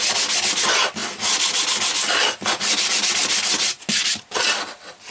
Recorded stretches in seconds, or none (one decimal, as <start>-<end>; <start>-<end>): 0.0-5.1